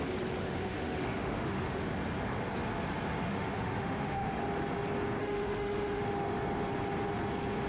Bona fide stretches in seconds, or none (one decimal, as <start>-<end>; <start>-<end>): 0.0-0.4; 1.8-3.3; 4.4-5.2; 6.0-7.7

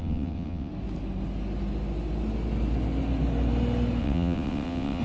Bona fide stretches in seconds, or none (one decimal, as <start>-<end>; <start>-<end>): 0.7-4.0

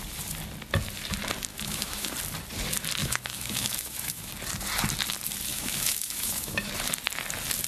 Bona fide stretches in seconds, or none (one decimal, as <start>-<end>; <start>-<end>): 0.0-1.5; 2.1-3.0; 4.3-5.5; 6.7-7.7

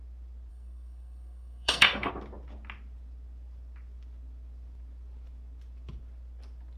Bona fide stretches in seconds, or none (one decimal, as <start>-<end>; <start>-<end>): 0.0-0.5; 2.1-6.8

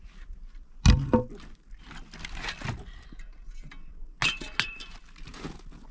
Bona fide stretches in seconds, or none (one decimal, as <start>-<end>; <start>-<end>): 0.0-5.9

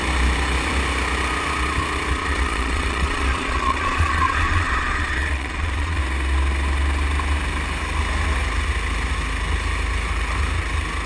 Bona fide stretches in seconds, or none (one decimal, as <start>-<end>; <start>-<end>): 0.0-2.2; 6.0-11.1